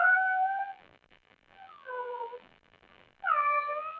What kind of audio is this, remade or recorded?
remade